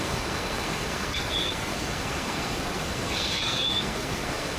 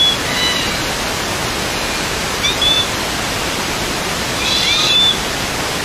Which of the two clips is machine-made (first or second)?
first